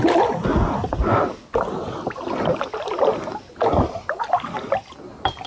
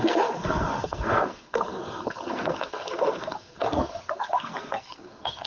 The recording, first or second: first